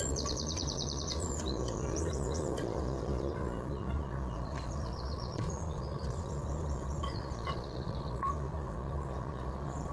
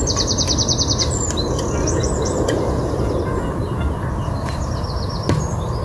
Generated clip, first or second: first